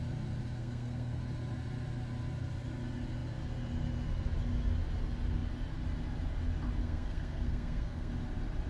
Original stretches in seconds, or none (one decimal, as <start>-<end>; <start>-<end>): 0.0-0.6; 1.2-6.8; 8.1-8.7